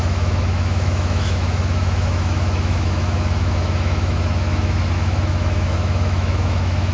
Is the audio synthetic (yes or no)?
yes